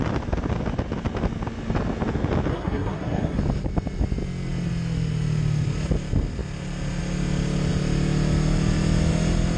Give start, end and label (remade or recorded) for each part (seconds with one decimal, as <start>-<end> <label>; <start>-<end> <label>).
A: 0.0-2.5 recorded; 2.5-3.4 remade; 3.4-9.6 recorded